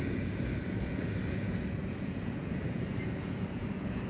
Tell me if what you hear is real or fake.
fake